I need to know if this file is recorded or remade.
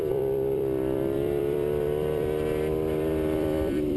remade